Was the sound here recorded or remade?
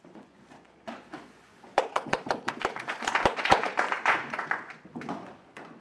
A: remade